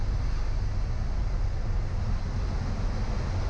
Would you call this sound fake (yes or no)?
no